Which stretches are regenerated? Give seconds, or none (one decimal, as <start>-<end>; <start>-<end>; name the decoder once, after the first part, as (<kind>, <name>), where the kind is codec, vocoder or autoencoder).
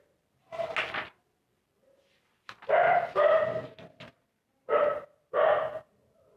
none